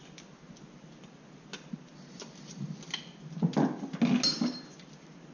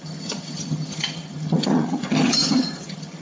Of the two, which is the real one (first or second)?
first